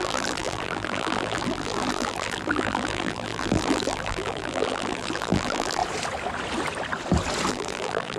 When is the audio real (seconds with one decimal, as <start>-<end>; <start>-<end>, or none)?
5.8-7.5

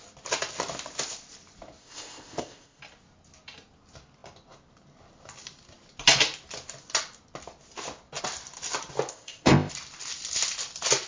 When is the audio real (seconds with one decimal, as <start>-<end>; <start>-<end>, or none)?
0.0-1.8; 2.8-9.1; 9.7-11.1

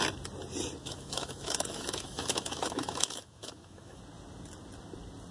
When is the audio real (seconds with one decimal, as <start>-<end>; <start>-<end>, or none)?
0.0-0.8; 4.0-5.3

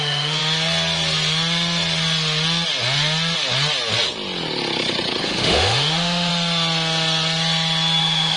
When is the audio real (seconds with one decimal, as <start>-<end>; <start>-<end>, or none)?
0.4-5.2; 6.3-8.0

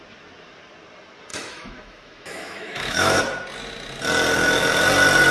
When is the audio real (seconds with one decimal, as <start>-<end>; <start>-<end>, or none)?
0.0-1.3; 3.2-5.3